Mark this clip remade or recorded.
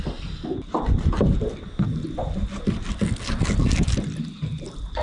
recorded